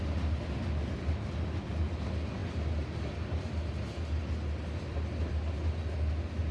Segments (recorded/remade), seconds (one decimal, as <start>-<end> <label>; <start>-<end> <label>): 0.0-6.5 recorded